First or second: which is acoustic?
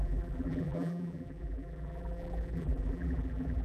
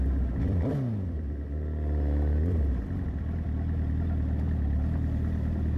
second